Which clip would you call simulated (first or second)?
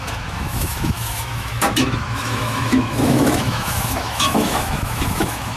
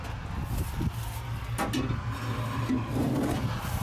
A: first